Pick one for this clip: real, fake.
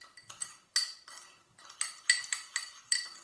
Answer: real